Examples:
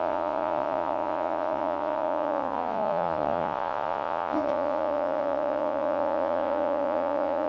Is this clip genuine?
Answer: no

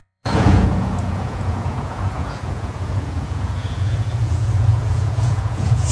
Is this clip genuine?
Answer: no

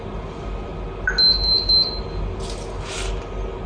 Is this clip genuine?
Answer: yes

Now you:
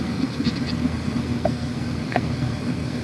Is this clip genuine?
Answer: no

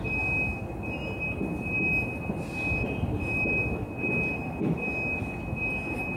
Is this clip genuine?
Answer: yes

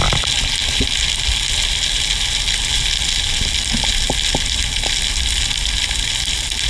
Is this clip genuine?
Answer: yes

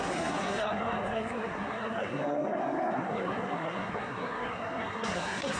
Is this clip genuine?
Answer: no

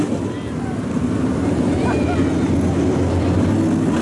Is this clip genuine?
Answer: yes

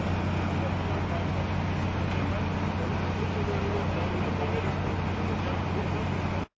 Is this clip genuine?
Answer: yes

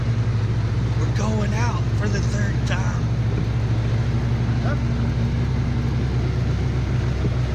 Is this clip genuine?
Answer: yes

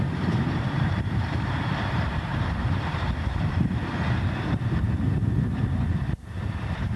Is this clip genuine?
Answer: no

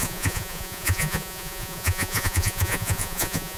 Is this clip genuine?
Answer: no